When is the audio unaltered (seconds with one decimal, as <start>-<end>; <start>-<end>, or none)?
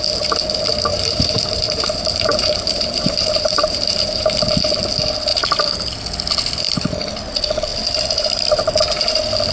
0.0-0.9; 4.4-5.3; 5.9-9.5